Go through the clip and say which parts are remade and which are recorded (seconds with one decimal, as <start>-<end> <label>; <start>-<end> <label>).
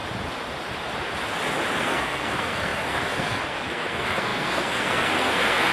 0.0-1.8 recorded; 1.8-5.7 remade